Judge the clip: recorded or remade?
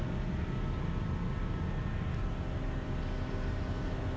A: recorded